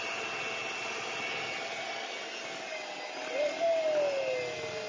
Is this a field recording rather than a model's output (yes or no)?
yes